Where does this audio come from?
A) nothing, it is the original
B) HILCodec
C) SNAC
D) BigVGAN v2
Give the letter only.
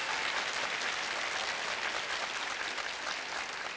A